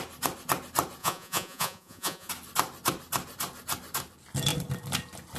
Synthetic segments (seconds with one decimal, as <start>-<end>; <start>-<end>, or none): 1.0-2.3